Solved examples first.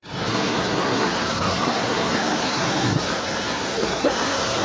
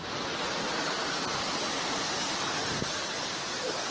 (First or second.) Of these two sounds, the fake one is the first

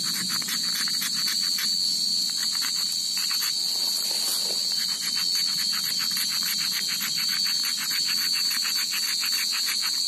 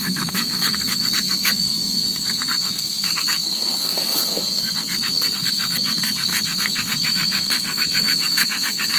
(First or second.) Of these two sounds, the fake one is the second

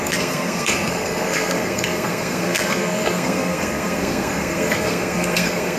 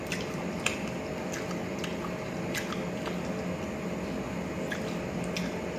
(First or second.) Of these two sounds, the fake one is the first